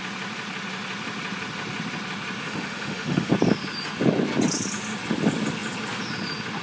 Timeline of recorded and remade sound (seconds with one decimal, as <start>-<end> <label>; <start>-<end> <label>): 0.0-2.4 recorded; 2.4-3.3 remade; 3.3-6.6 recorded